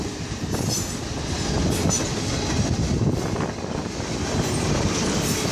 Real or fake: real